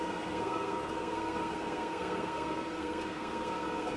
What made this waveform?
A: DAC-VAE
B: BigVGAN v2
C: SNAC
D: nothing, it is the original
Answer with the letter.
C